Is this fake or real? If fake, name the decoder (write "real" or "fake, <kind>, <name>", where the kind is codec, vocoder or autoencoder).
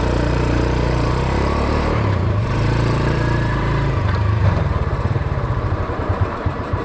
fake, vocoder, BigVGAN v2